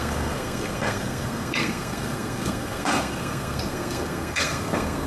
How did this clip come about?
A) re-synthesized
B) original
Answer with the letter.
A